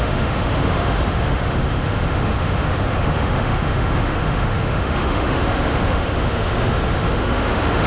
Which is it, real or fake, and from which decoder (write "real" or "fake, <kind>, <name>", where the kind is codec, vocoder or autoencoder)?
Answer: fake, autoencoder, DAC-VAE